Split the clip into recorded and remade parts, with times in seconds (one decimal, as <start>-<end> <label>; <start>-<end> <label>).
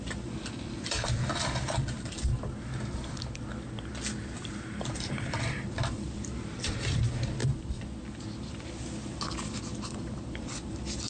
0.0-2.3 remade; 2.3-4.8 recorded; 4.8-7.4 remade; 7.4-9.4 recorded; 9.4-11.1 remade